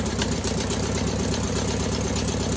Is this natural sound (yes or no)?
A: yes